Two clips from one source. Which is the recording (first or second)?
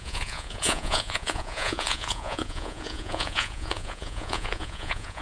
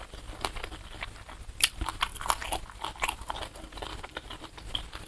second